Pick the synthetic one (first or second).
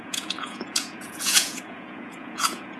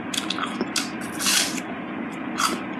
first